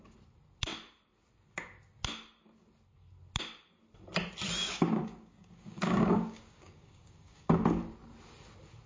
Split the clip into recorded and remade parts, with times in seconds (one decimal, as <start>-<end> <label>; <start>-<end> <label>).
0.0-4.6 recorded; 4.6-7.8 remade; 7.8-8.9 recorded